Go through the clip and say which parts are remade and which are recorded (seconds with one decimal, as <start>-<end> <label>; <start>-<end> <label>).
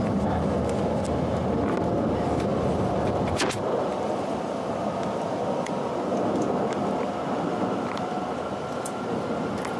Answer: 0.0-2.5 recorded; 2.5-3.1 remade; 3.1-3.9 recorded; 3.9-5.9 remade; 5.9-9.8 recorded